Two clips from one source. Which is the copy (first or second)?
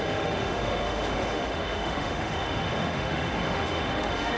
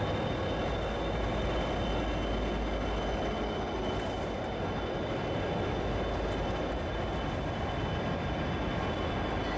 first